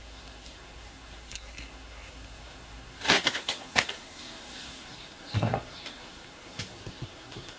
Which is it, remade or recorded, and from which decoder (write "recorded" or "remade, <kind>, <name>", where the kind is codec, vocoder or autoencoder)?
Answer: remade, codec, SNAC